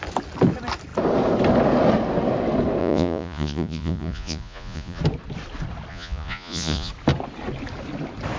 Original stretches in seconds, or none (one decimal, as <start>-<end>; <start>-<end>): 0.0-2.8; 5.0-5.9; 6.9-8.4